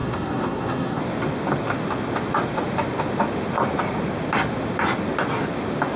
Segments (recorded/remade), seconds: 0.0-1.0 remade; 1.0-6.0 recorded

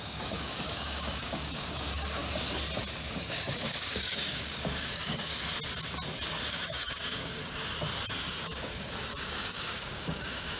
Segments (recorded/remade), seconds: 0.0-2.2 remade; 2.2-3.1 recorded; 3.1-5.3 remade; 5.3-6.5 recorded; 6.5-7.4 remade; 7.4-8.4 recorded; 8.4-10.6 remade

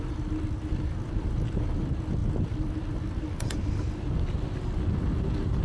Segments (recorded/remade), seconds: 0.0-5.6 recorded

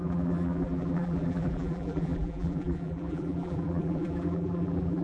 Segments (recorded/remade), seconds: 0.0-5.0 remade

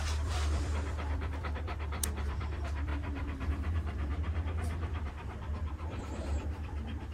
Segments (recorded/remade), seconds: 0.0-4.1 remade; 4.1-4.7 recorded; 4.7-7.1 remade

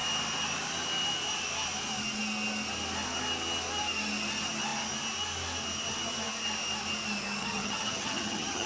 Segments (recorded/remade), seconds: 0.0-7.4 recorded; 7.4-8.7 remade